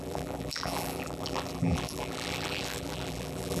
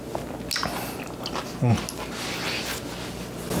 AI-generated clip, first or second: first